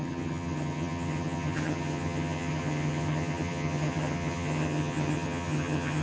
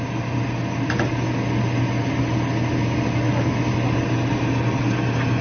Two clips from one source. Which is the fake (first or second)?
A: first